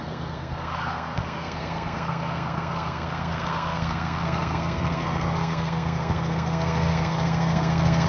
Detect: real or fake fake